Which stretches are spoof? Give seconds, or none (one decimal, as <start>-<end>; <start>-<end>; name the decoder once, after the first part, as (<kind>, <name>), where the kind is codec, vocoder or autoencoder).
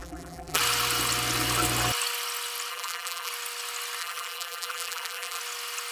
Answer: 0.0-0.6 (vocoder, BigVGAN v2); 2.7-3.3; 4.0-5.4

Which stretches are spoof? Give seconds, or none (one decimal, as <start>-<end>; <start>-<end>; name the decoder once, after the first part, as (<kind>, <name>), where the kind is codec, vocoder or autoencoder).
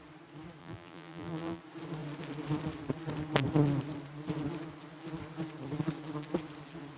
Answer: 0.6-1.6 (vocoder, BigVGAN v2)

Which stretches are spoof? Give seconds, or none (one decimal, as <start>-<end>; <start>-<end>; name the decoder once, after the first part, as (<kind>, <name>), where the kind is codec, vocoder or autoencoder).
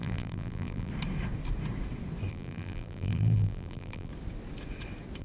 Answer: 0.0-0.9 (vocoder, BigVGAN v2); 2.3-4.1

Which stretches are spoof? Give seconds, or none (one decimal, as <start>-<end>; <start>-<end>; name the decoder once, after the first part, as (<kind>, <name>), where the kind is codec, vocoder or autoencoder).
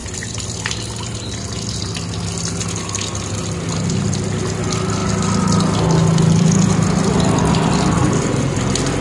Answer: 0.0-1.4 (vocoder, BigVGAN v2); 8.0-9.0